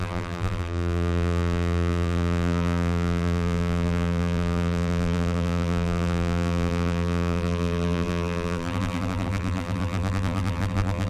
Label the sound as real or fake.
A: fake